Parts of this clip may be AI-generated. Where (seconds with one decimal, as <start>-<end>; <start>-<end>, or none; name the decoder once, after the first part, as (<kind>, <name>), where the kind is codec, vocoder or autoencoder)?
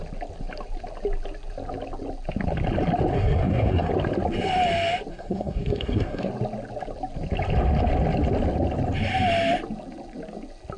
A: 3.1-3.9 (codec, SNAC); 5.1-6.3